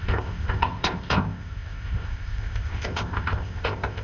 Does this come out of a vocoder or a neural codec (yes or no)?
yes